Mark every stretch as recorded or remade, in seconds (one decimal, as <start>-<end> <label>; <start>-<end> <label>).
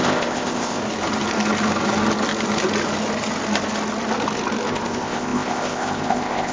0.0-0.8 remade; 0.8-4.7 recorded; 4.7-6.5 remade